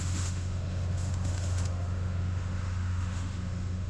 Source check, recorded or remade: remade